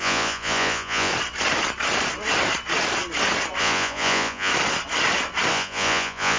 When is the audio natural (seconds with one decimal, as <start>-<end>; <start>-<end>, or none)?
1.1-3.6; 4.5-5.5